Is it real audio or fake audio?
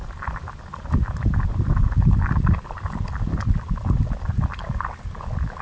real